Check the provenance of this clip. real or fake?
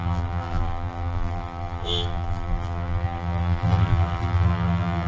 fake